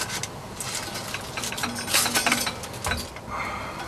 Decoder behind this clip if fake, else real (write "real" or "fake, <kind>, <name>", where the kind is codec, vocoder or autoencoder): real